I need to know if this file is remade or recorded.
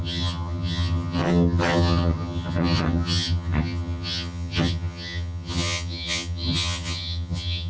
remade